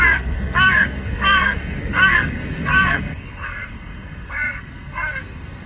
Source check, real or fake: fake